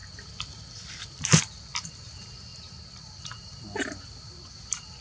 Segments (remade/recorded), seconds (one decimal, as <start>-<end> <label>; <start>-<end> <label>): 0.0-5.0 recorded